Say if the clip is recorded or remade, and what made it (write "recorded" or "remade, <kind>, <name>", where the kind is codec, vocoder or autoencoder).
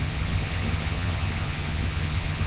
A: remade, vocoder, HiFi-GAN